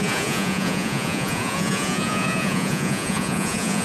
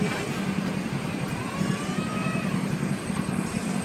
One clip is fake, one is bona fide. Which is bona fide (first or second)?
second